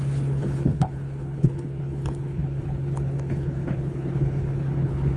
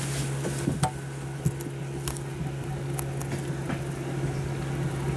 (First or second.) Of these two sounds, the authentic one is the second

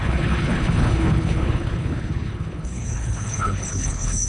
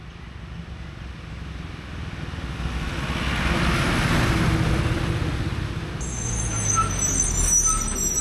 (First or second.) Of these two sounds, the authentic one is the second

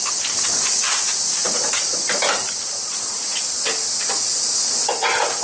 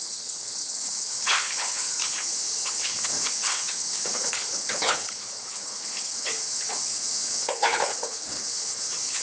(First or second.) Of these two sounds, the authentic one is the first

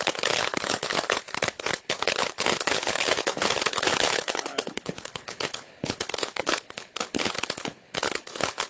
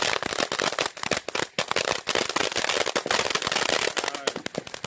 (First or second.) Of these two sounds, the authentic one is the second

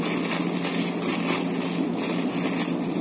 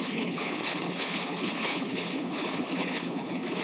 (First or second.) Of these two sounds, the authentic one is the first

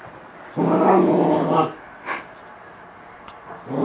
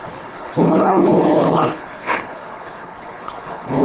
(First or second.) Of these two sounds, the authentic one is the first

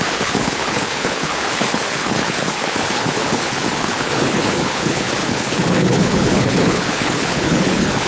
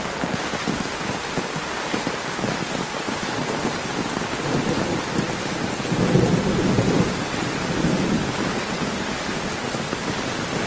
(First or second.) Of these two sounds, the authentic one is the second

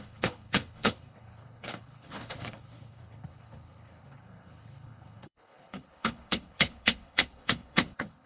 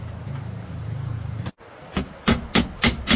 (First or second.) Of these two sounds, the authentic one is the second